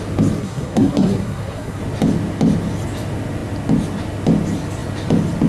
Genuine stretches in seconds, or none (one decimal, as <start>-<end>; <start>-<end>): 0.0-0.4; 1.8-5.5